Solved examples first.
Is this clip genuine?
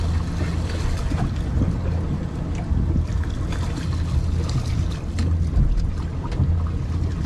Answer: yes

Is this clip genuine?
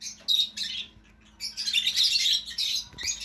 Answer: yes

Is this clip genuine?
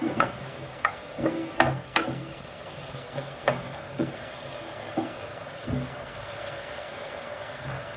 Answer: no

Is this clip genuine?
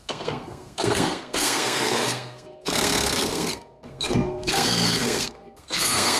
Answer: no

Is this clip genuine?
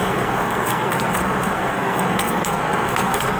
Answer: no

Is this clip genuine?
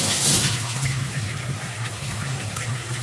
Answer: no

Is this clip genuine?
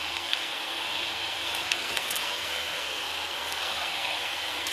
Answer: no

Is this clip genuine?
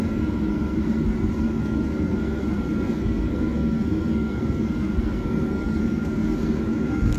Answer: no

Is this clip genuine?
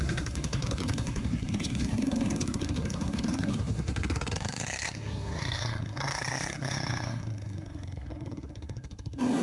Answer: no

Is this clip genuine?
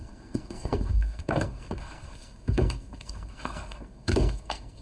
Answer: no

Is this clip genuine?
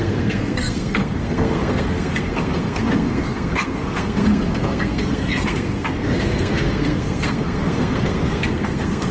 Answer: no